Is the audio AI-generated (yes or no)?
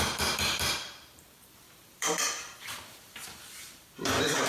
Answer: yes